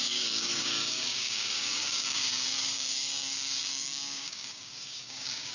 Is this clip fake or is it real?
fake